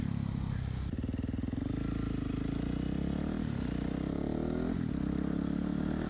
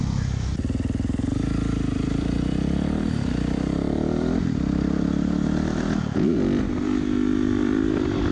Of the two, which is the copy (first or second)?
second